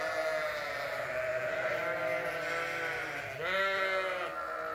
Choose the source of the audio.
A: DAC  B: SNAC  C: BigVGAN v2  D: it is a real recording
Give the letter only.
D